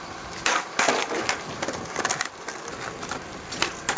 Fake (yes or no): no